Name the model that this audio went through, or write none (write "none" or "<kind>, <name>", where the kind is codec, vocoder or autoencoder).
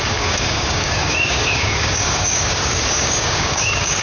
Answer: codec, DAC